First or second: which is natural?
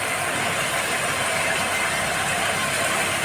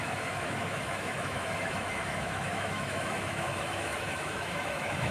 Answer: first